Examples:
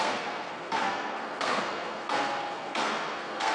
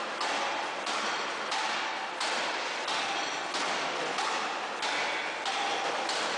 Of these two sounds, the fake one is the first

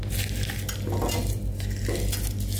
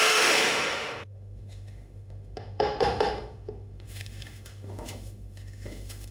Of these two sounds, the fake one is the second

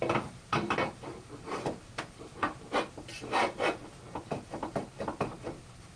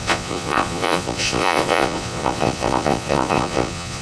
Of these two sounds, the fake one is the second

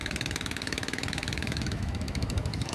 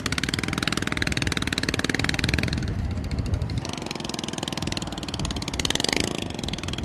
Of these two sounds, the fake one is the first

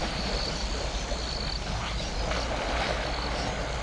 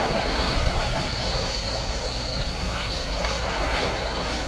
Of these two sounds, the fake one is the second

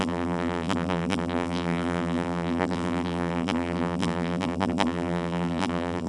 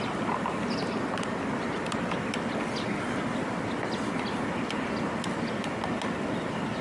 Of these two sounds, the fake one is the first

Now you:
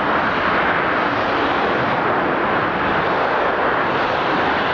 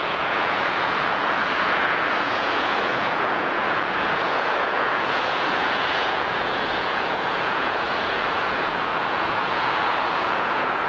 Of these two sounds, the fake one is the second